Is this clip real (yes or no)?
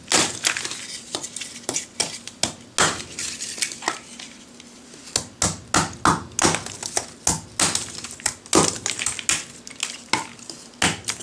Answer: yes